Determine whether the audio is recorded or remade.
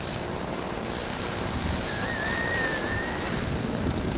remade